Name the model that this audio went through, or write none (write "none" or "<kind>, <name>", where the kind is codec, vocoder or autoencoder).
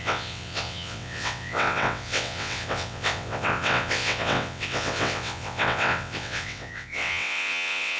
vocoder, WaveNeXt